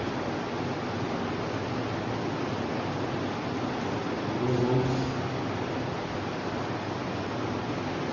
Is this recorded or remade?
recorded